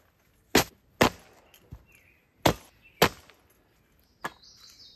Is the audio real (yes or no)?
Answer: yes